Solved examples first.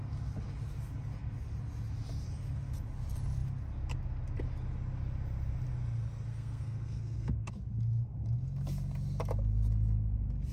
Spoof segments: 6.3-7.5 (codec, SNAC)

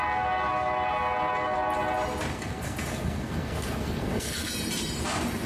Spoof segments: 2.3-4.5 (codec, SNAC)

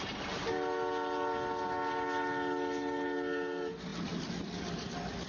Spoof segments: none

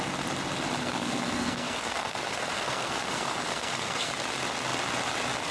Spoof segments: 0.8-4.1 (codec, SNAC)

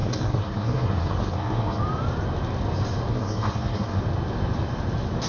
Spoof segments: 0.0-1.8 (codec, SNAC); 3.1-4.0

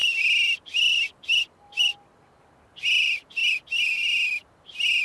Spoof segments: none

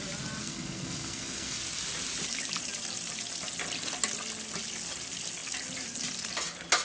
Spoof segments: 0.4-1.6 (codec, SNAC)